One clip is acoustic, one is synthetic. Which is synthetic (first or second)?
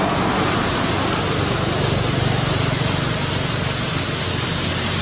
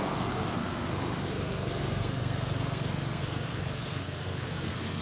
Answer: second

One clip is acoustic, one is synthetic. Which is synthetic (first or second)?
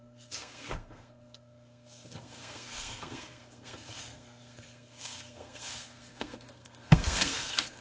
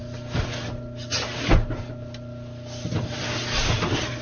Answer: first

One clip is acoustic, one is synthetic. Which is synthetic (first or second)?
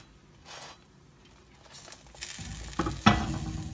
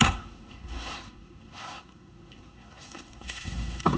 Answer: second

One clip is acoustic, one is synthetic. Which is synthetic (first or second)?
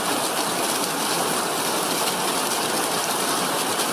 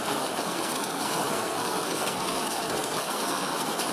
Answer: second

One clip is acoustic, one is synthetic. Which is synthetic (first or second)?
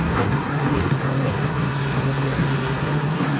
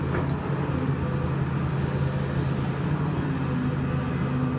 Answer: first